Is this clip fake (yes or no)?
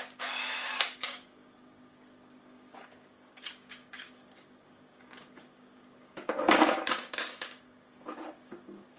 yes